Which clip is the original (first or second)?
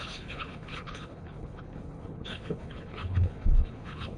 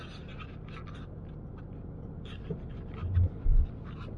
second